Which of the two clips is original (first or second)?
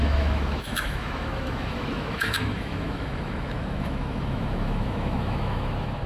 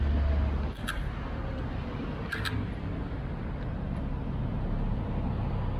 second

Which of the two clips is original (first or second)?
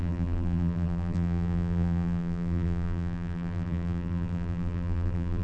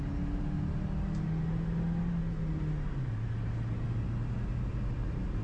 second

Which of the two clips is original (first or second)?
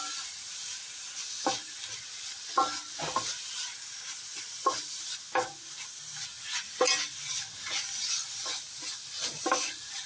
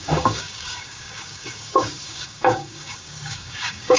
first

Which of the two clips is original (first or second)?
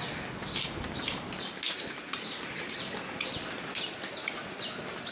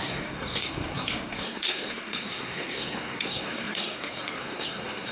first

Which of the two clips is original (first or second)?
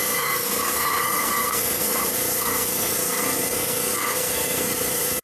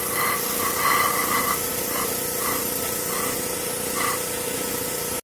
second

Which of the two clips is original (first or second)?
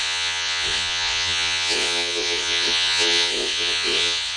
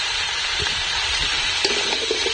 second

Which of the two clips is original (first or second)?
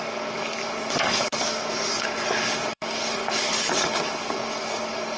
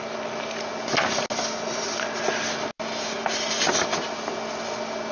second